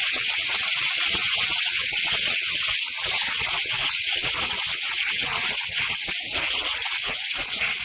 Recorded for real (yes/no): no